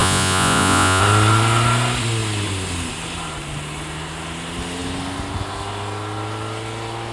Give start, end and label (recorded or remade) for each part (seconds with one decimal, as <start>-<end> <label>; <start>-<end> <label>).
0.0-1.0 remade; 1.0-7.1 recorded